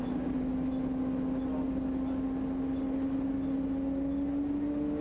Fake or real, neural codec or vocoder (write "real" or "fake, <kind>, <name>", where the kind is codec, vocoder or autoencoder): real